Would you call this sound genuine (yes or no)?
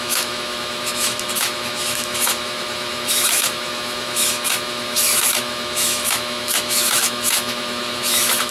no